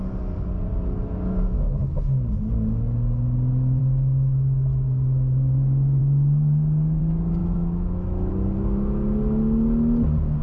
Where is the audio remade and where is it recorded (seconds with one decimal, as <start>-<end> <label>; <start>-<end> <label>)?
0.0-7.4 recorded; 7.4-8.3 remade; 8.3-10.4 recorded